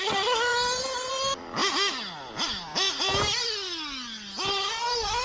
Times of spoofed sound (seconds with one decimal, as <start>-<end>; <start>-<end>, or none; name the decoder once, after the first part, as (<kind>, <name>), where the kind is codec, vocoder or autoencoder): none